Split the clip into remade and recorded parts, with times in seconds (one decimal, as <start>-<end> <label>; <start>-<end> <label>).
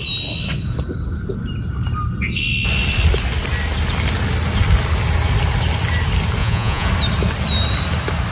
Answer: 0.0-6.4 recorded; 6.4-6.9 remade; 6.9-8.3 recorded